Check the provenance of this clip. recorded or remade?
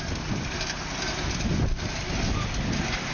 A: recorded